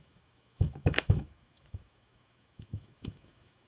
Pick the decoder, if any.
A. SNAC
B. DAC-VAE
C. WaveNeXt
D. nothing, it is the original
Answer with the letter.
B